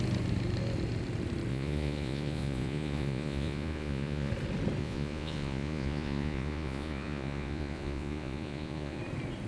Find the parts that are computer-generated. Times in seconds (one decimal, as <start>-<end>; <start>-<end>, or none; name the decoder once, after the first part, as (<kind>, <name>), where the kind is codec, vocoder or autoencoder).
1.5-4.3 (vocoder, Vocos); 4.8-9.0